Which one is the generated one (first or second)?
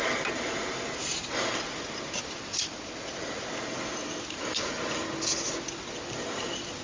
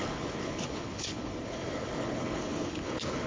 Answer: second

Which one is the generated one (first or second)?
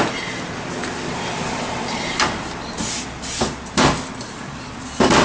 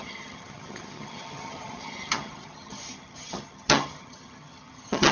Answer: second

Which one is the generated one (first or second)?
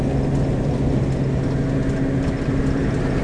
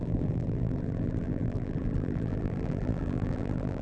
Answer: second